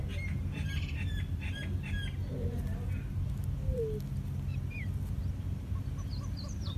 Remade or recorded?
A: recorded